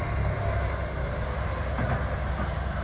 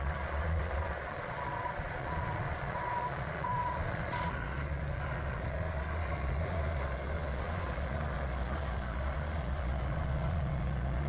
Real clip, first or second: first